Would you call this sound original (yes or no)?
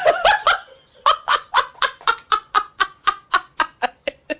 no